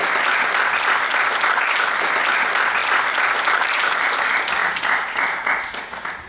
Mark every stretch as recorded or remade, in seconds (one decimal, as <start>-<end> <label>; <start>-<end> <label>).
0.0-6.3 recorded